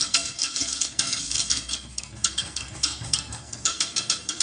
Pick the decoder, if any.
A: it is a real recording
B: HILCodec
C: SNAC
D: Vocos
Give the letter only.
C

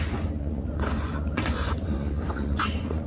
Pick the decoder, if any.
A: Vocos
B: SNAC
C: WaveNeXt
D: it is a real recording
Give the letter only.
A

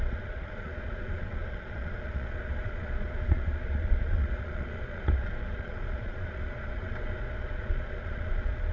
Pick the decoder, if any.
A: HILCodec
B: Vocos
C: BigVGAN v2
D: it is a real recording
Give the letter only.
B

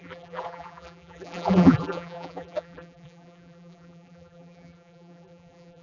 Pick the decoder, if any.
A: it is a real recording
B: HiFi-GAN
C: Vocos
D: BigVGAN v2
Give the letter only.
D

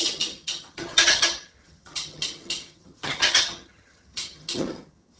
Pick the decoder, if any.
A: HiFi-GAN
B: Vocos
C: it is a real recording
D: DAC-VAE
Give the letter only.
A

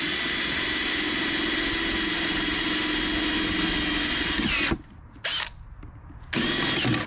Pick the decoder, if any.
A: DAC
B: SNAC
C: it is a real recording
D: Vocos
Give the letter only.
C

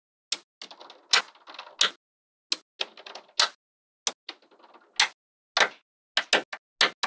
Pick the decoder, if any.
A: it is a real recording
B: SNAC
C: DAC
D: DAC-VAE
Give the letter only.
A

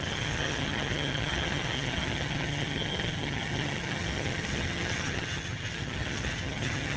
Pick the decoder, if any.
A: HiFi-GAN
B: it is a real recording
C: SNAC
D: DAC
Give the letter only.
A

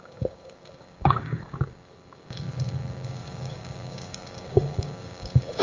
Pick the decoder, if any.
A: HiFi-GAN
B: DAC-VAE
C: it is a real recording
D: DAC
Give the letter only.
D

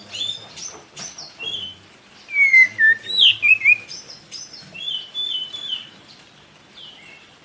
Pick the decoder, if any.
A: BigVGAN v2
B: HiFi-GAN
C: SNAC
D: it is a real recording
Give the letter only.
D